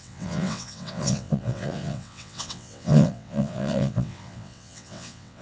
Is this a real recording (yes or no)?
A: no